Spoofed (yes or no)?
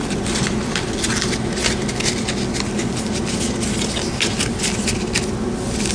no